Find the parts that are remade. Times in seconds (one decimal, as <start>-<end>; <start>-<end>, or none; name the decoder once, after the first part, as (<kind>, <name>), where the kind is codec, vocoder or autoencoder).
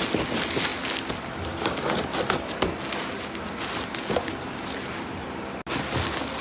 none